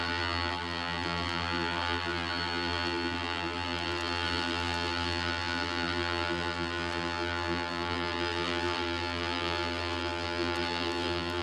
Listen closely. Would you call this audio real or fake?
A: fake